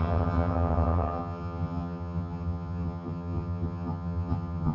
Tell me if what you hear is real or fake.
fake